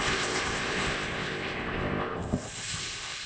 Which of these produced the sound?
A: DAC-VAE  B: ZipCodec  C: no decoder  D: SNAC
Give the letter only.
B